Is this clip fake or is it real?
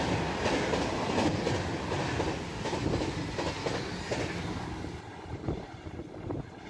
real